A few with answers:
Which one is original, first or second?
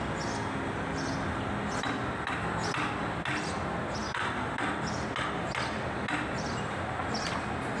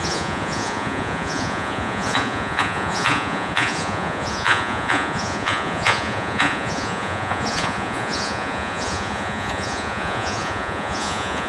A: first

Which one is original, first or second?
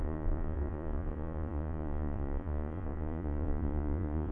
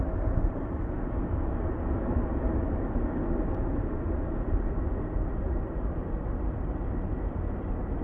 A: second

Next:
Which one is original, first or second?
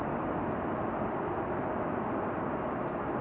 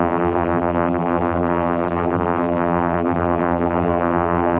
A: first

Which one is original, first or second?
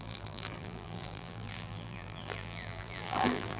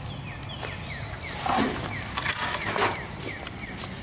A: second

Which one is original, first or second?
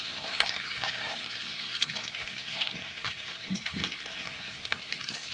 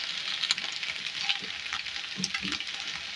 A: second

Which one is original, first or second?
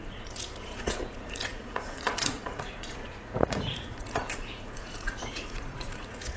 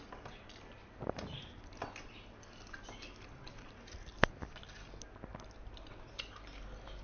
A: second